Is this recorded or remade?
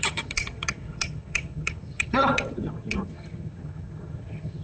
remade